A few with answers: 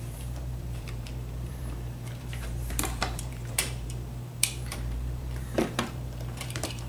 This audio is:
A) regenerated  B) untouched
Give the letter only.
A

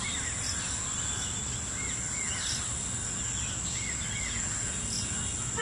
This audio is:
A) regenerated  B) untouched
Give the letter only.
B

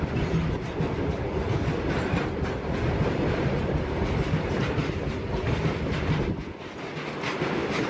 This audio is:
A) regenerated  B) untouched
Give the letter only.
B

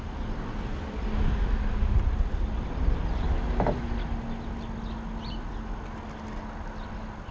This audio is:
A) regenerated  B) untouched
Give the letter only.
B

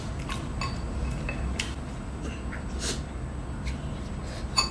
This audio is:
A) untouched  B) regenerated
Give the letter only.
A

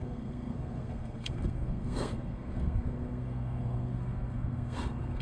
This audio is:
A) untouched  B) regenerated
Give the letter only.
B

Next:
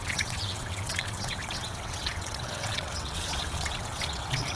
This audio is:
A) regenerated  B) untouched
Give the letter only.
A